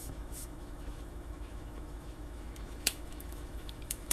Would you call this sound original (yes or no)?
no